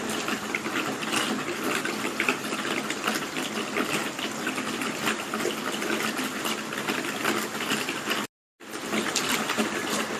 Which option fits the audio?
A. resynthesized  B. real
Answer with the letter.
B